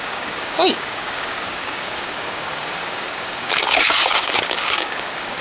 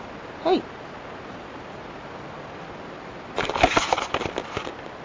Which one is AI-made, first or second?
first